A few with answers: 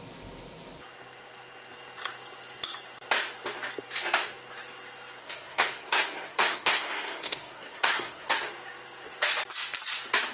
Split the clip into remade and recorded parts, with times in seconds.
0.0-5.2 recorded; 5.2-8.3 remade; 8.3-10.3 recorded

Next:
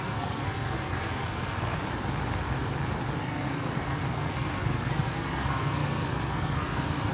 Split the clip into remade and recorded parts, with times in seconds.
0.0-1.8 remade; 1.8-3.2 recorded; 3.2-7.1 remade

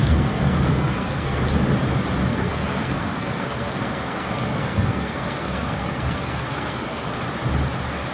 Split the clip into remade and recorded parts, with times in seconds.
0.0-1.4 remade; 1.4-2.3 recorded; 2.3-7.2 remade; 7.2-8.1 recorded

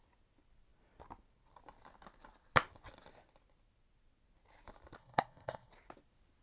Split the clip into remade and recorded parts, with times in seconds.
0.0-5.0 recorded; 5.0-5.7 remade; 5.7-6.4 recorded

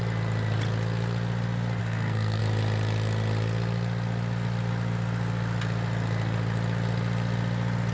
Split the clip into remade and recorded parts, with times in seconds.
0.0-1.8 recorded; 1.8-2.4 remade; 2.4-7.9 recorded